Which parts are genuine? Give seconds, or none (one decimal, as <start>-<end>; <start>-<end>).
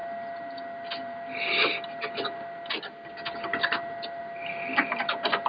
0.0-5.5